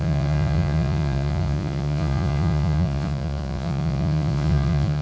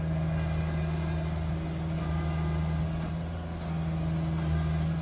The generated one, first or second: first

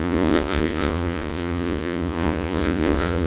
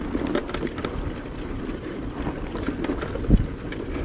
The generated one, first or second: first